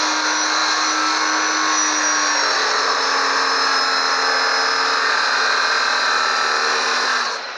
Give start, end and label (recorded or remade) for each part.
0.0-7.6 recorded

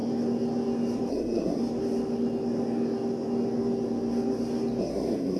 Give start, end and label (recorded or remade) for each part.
0.0-1.1 recorded; 1.1-1.6 remade; 1.6-4.8 recorded; 4.8-5.4 remade